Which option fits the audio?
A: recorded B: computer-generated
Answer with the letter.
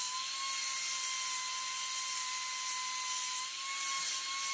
A